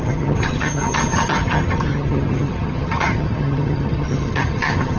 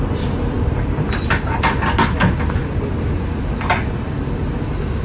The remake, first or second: first